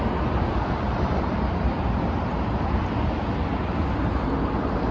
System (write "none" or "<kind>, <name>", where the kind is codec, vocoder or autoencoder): vocoder, BigVGAN v2